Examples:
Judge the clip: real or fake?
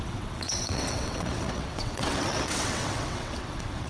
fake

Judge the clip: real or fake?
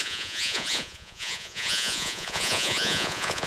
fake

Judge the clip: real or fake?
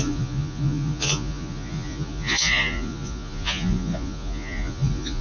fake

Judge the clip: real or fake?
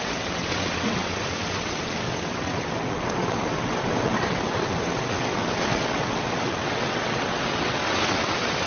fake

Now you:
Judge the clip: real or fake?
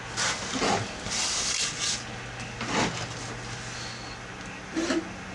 real